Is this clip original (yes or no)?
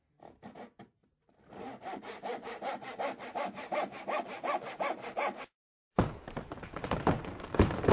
no